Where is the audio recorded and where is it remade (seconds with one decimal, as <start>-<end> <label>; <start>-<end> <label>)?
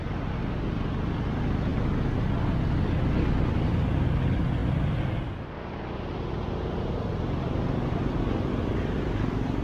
0.0-9.6 recorded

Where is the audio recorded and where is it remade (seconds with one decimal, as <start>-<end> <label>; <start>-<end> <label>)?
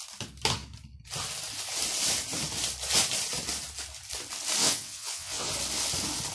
0.0-4.6 recorded; 4.6-5.5 remade; 5.5-6.3 recorded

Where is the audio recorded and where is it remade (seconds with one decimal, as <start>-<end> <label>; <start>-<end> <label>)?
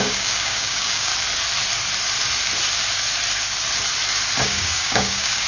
0.0-1.1 remade; 1.1-4.4 recorded; 4.4-5.5 remade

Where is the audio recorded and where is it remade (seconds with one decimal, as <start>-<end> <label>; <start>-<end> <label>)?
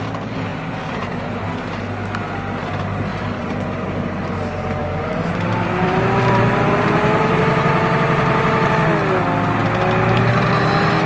0.0-3.1 recorded; 3.1-4.3 remade; 4.3-4.8 recorded; 4.8-8.7 remade; 8.7-11.1 recorded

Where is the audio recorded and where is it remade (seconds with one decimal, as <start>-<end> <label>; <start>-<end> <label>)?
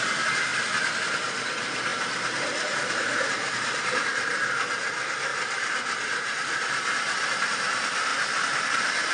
0.0-0.5 remade; 0.5-1.1 recorded; 1.1-8.1 remade; 8.1-8.7 recorded; 8.7-9.1 remade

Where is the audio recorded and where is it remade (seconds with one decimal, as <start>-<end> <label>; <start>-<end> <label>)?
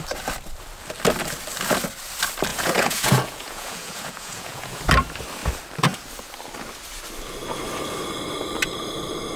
0.0-2.5 recorded; 2.5-4.8 remade; 4.8-9.4 recorded